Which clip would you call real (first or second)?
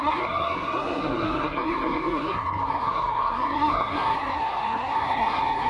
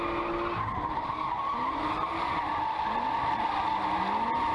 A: second